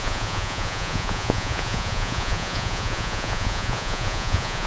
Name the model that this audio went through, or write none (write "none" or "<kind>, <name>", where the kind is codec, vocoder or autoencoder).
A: vocoder, Vocos